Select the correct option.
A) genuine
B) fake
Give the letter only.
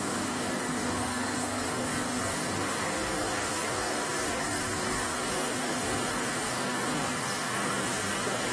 B